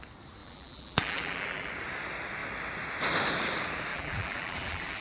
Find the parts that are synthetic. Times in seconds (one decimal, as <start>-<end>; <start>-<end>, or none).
0.4-1.7; 3.9-5.0